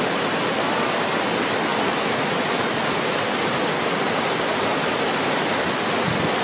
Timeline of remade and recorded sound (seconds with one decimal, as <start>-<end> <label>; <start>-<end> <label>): 0.0-6.4 recorded